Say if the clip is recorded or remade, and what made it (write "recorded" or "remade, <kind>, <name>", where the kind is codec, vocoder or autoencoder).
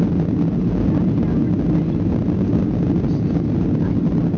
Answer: recorded